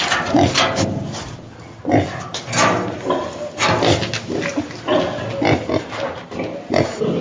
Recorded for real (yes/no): yes